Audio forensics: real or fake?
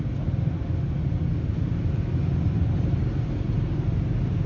real